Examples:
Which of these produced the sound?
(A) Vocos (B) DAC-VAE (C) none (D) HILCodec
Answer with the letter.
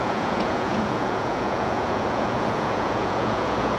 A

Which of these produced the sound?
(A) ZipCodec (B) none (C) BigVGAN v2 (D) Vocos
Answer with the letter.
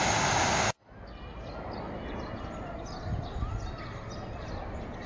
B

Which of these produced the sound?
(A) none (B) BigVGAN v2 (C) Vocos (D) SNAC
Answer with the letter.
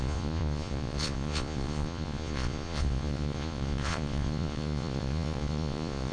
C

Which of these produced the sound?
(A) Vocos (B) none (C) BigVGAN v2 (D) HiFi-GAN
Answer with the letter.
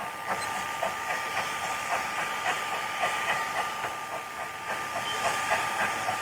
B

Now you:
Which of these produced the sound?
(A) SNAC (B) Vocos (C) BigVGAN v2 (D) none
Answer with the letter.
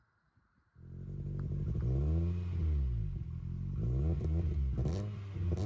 D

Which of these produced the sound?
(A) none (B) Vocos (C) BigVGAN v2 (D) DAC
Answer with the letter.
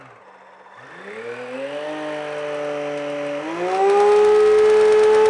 A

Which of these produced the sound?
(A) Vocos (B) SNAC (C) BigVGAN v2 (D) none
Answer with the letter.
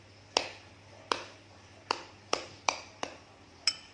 D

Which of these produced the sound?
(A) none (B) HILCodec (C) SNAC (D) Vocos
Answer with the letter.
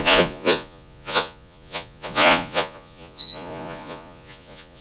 D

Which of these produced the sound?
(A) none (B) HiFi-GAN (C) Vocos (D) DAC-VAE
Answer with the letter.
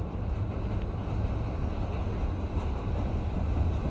A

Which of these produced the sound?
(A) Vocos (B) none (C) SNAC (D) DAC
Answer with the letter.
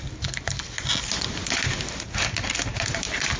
B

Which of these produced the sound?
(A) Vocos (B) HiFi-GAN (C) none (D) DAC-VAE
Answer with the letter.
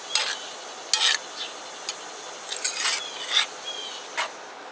C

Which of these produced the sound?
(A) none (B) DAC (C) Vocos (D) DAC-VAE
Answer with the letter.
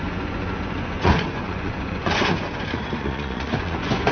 C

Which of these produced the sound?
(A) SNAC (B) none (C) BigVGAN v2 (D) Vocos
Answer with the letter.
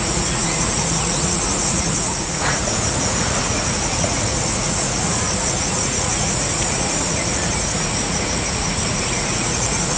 D